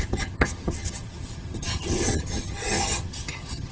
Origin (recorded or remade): remade